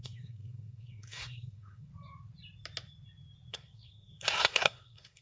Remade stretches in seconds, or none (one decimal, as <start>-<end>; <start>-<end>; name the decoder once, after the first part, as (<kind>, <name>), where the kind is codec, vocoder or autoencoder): 0.0-1.9 (codec, SNAC); 3.5-5.2